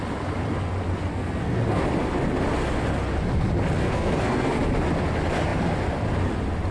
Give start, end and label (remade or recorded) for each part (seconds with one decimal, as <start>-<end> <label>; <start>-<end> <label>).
0.0-1.1 recorded; 1.1-1.8 remade; 1.8-3.8 recorded; 3.8-4.5 remade; 4.5-6.7 recorded